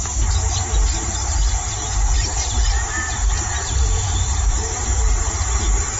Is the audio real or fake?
fake